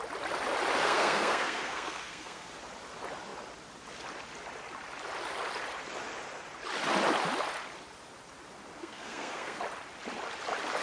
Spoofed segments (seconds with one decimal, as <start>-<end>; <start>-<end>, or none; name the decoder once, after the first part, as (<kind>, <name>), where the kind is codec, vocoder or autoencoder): 0.8-2.5 (codec, SNAC); 8.8-9.6